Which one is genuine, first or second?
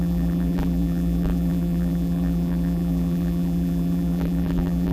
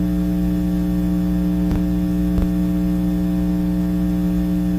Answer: second